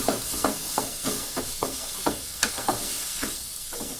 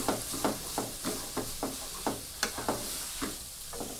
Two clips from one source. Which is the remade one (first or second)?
first